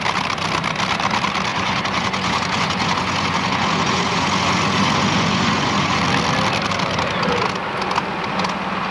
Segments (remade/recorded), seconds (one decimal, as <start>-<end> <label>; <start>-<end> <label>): 0.0-1.5 recorded; 1.5-6.0 remade; 6.0-8.9 recorded